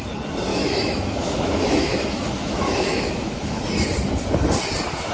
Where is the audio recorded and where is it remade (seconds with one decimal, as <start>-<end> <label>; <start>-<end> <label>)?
0.0-0.5 recorded; 0.5-3.6 remade; 3.6-5.1 recorded